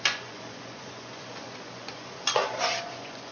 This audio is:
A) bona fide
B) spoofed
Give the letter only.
B